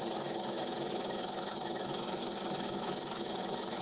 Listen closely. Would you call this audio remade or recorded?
remade